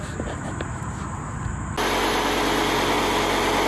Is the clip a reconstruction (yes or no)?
no